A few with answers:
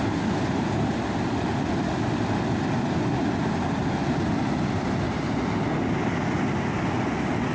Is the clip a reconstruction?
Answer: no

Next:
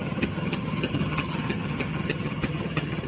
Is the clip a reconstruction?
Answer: yes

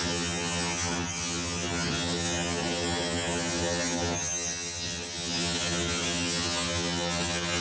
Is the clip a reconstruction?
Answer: yes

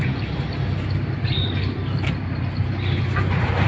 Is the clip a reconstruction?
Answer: no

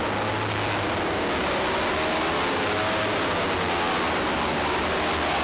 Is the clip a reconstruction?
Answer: no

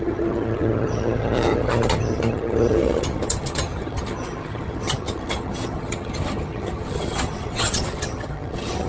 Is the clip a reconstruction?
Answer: yes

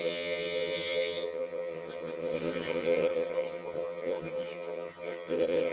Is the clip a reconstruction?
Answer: yes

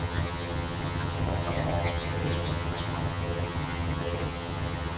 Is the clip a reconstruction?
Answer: yes